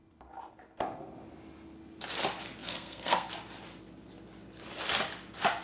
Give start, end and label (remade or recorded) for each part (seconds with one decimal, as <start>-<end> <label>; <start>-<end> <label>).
0.0-2.6 recorded; 2.6-3.3 remade; 3.3-5.6 recorded